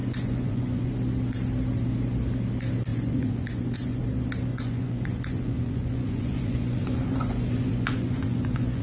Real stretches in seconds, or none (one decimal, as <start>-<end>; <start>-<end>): 0.9-2.9; 4.0-4.5